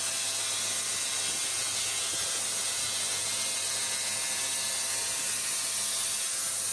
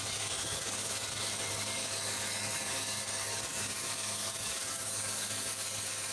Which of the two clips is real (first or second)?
first